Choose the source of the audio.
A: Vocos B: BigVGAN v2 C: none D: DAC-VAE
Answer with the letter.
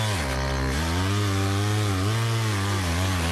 C